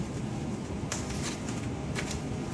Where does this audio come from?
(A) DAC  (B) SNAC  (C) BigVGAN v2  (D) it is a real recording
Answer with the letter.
D